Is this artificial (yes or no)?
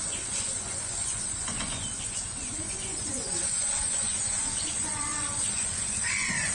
yes